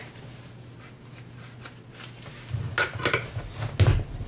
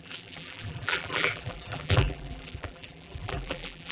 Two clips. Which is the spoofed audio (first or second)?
second